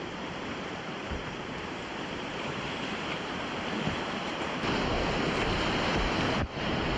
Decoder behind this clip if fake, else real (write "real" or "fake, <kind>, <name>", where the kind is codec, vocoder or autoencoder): fake, vocoder, BigVGAN v2